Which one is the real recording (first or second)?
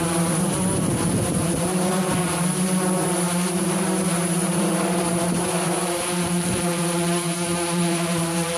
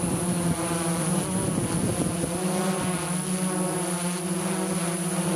second